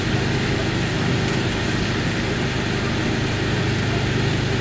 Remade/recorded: recorded